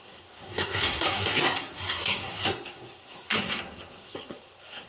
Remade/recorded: remade